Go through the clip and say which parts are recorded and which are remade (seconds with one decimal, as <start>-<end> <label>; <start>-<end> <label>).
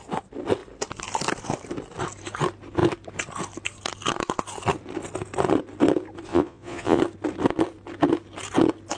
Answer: 0.0-6.3 recorded; 6.3-7.0 remade; 7.0-9.0 recorded